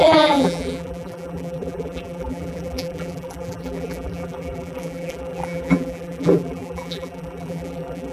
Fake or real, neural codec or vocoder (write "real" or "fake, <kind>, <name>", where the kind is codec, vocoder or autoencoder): fake, vocoder, BigVGAN v2